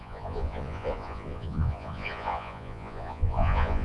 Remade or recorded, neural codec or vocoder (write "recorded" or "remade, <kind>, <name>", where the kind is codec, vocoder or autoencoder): remade, vocoder, Vocos